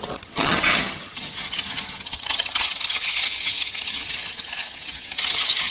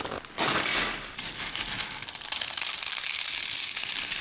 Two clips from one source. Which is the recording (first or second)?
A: second